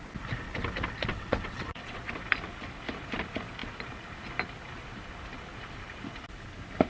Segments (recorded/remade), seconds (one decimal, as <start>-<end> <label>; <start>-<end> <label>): 0.0-1.1 recorded; 1.1-2.0 remade; 2.0-6.9 recorded